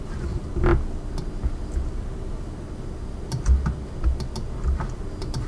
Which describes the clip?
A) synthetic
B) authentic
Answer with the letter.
B